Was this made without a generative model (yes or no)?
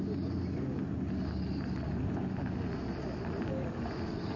yes